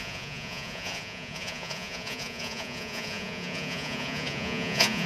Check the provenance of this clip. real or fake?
fake